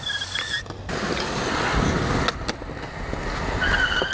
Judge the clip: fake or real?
real